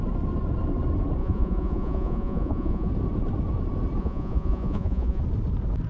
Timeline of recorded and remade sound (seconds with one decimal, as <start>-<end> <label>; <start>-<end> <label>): 0.0-1.2 recorded; 1.2-2.9 remade; 2.9-4.0 recorded; 4.0-5.2 remade; 5.2-5.9 recorded